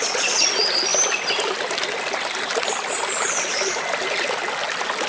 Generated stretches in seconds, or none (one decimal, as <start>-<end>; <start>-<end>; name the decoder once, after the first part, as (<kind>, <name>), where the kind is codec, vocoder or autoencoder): none